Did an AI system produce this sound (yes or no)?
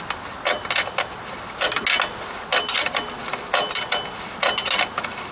no